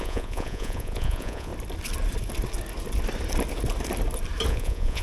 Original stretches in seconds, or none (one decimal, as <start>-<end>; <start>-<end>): 1.5-4.5